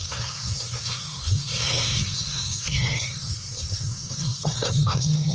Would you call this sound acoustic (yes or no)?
no